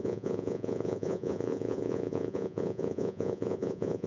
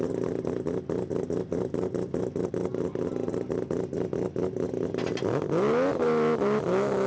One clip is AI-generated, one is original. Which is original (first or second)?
second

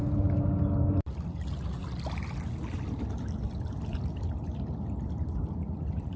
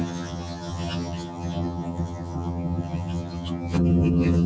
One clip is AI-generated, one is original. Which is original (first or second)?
first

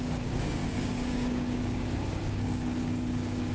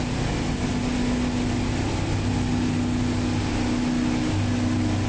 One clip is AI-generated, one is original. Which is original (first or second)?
second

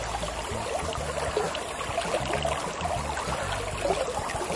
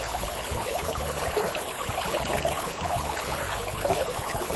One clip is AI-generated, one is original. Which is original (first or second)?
first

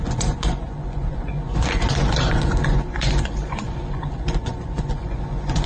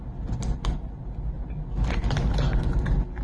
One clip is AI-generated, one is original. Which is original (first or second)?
second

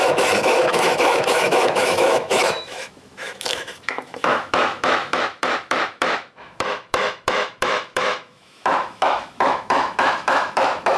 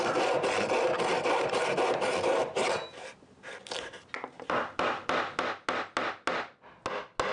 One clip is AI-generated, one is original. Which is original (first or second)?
second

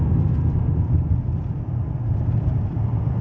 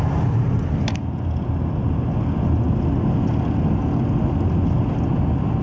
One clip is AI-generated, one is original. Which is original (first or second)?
second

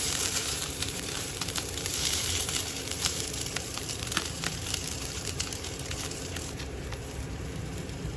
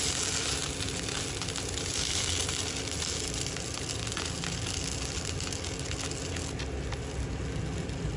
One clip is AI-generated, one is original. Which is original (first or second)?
second